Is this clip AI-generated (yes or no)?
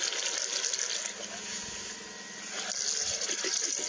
no